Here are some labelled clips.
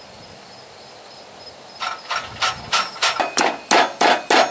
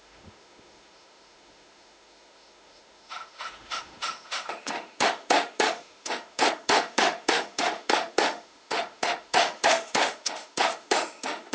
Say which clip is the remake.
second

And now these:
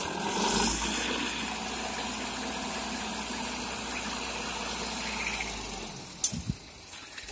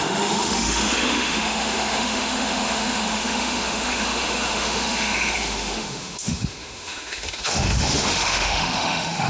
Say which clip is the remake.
second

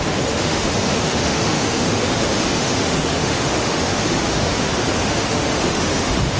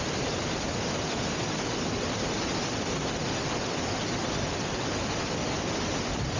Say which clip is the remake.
first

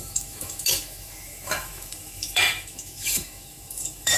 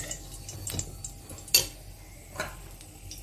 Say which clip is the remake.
first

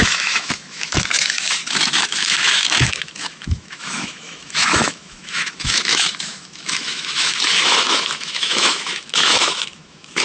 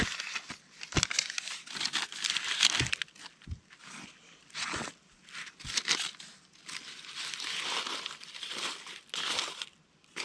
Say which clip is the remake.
first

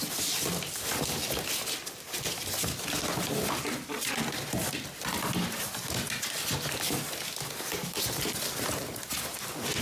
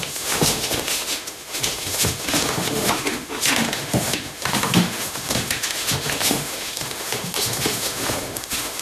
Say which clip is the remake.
second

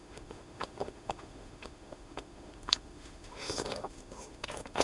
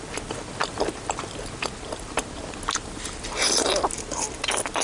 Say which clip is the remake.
first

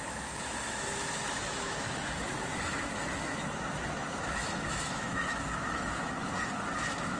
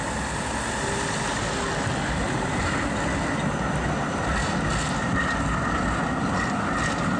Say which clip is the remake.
first